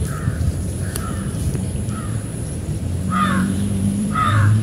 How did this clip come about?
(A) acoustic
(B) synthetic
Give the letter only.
B